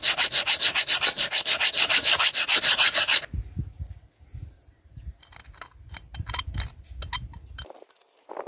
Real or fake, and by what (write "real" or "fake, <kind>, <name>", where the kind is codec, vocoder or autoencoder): real